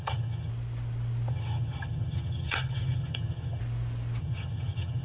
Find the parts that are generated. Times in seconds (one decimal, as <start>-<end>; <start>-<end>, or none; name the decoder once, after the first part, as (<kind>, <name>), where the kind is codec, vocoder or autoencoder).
0.0-0.5 (vocoder, HiFi-GAN); 1.3-3.6; 4.2-5.0